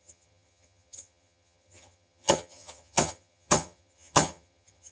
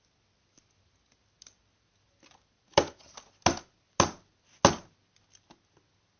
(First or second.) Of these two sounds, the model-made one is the first